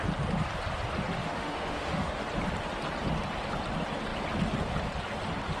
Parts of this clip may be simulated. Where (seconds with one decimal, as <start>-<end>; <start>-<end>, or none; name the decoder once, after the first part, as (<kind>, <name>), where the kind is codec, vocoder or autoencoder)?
1.2-2.2 (autoencoder, DAC-VAE)